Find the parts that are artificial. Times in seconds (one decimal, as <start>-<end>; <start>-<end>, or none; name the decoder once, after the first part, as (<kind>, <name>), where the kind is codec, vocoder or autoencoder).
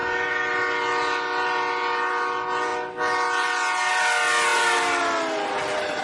none